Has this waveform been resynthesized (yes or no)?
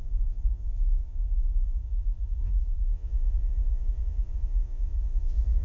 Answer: yes